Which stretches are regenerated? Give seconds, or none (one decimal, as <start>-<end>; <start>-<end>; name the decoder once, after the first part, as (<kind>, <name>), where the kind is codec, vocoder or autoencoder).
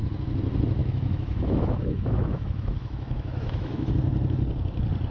0.8-3.9 (autoencoder, DAC-VAE)